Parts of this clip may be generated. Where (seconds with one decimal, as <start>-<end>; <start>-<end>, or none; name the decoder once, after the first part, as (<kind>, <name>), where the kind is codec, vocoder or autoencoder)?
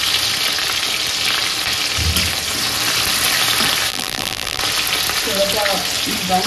3.9-4.6 (vocoder, BigVGAN v2)